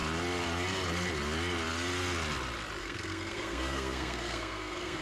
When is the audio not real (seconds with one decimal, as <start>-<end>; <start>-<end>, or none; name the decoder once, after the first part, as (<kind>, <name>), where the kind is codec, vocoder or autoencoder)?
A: 2.8-5.0 (codec, SNAC)